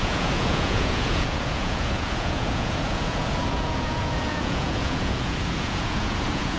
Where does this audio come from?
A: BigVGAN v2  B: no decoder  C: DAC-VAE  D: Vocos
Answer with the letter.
D